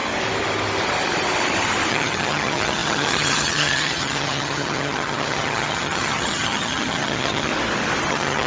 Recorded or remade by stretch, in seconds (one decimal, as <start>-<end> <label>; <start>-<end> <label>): 0.0-1.9 recorded; 1.9-7.5 remade; 7.5-8.1 recorded; 8.1-8.5 remade